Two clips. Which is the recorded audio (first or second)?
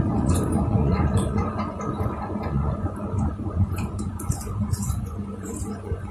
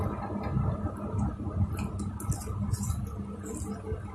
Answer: second